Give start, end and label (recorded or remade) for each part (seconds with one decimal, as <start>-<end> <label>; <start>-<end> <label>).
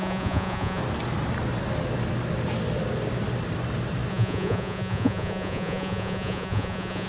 0.0-0.8 remade; 0.8-4.1 recorded; 4.1-7.1 remade